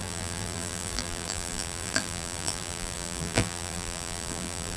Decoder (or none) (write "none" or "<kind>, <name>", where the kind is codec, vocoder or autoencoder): vocoder, BigVGAN v2